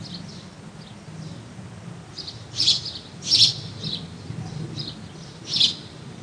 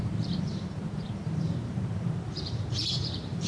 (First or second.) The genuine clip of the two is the first